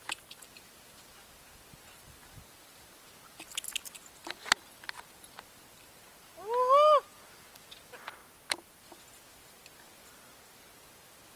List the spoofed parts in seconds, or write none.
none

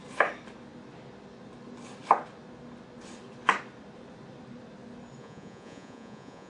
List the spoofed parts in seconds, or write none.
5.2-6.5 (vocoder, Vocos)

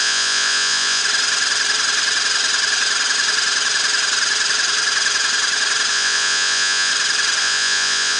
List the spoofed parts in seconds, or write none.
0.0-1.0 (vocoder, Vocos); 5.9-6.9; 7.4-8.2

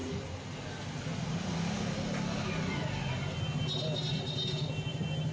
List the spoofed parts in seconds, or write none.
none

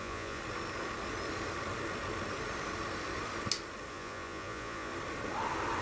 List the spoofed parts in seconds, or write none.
0.0-0.4 (vocoder, Vocos); 3.9-4.9

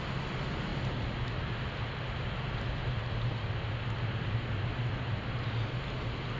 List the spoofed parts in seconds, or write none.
none